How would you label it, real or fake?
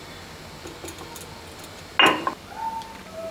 real